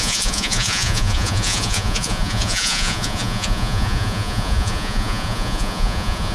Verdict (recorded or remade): remade